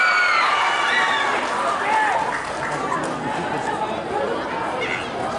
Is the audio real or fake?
real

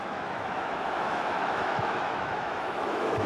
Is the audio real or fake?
fake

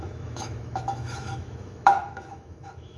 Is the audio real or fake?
fake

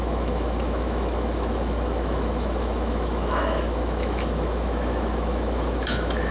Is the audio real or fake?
fake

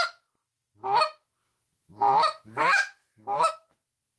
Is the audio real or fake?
fake